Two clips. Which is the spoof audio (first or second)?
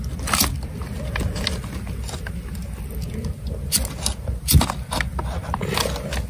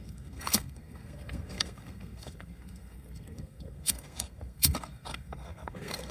second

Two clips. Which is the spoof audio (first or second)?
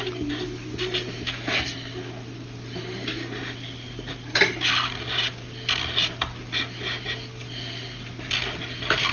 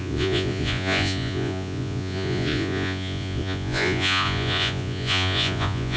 second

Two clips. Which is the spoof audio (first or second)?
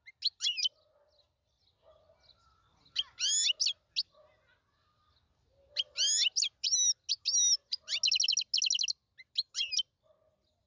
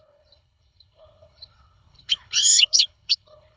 second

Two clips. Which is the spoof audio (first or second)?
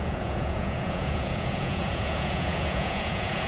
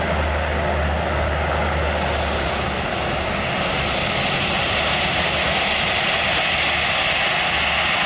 first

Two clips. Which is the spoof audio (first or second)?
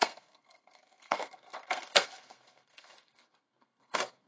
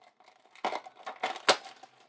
first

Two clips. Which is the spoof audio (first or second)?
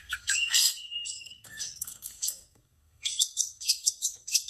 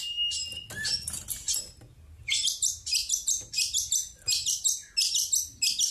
first